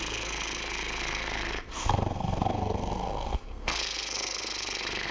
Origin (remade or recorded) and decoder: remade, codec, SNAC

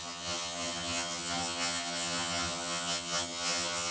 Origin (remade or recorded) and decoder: remade, vocoder, HiFi-GAN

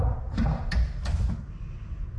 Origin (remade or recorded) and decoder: recorded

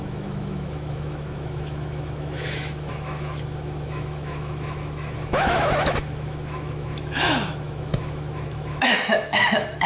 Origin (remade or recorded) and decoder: remade, autoencoder, DAC-VAE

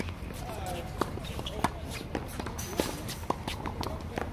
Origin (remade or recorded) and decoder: recorded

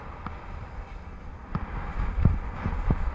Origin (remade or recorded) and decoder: recorded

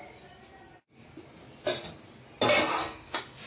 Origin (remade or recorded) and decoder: recorded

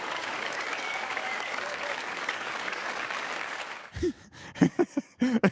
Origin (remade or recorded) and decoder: remade, codec, DAC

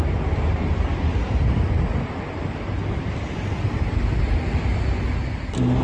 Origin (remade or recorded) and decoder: recorded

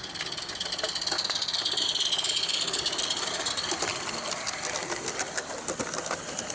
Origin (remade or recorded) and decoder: recorded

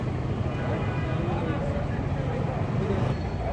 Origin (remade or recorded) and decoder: recorded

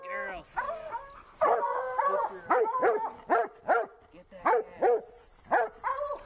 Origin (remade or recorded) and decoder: recorded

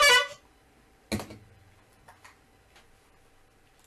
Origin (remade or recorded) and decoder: recorded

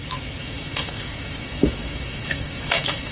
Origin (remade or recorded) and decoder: remade, autoencoder, DAC-VAE